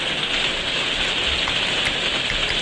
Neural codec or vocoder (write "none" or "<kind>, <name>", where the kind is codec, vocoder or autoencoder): none